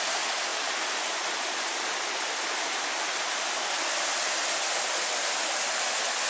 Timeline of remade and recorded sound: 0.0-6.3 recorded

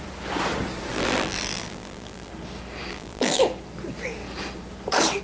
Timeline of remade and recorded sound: 0.0-0.9 recorded; 0.9-2.3 remade; 2.3-2.9 recorded; 2.9-3.4 remade; 3.4-5.2 recorded

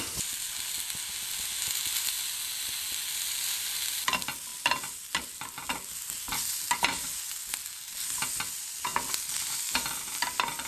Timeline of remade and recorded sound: 0.0-10.7 recorded

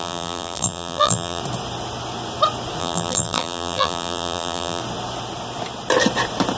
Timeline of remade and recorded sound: 0.0-1.4 remade; 1.4-2.8 recorded; 2.8-4.8 remade; 4.8-6.6 recorded

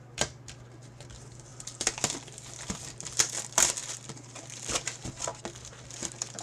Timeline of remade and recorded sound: 0.0-1.5 remade; 1.5-2.1 recorded; 2.1-3.8 remade; 3.8-4.4 recorded; 4.4-5.3 remade; 5.3-5.8 recorded; 5.8-6.4 remade

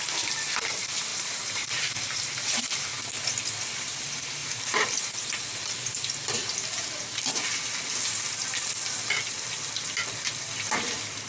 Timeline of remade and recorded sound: 0.0-1.1 recorded; 1.1-1.7 remade; 1.7-4.4 recorded; 4.4-5.4 remade; 5.4-11.3 recorded